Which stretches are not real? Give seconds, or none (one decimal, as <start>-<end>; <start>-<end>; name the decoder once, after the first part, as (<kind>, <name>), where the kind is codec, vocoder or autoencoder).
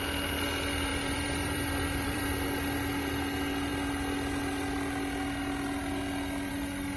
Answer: 0.9-2.2 (vocoder, BigVGAN v2)